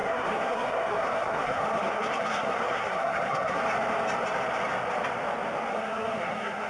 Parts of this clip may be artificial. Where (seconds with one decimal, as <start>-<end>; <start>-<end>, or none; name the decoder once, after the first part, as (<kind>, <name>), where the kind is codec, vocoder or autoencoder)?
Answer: 0.0-3.6 (codec, SNAC); 5.7-6.7